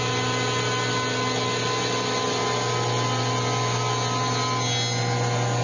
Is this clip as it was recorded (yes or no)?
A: yes